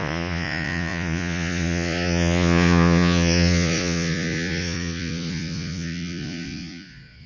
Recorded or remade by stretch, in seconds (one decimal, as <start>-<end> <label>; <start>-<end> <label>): 0.0-7.3 remade